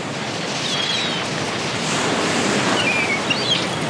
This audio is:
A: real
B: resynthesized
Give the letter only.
A